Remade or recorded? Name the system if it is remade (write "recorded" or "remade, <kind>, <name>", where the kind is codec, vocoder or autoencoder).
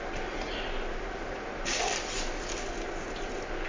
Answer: recorded